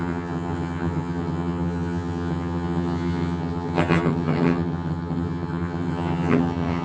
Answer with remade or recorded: remade